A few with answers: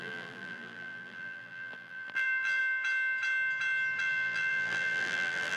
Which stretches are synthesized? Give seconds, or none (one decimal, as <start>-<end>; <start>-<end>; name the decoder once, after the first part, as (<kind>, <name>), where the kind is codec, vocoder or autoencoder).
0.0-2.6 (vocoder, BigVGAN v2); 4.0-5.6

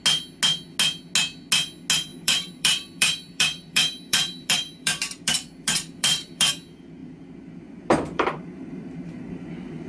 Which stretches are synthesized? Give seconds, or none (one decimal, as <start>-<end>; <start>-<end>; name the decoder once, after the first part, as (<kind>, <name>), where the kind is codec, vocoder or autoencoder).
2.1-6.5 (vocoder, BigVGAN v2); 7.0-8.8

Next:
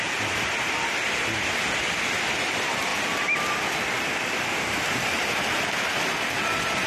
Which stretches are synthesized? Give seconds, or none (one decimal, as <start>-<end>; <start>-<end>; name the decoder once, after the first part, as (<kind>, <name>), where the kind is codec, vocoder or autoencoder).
0.0-2.9 (vocoder, BigVGAN v2); 4.1-6.9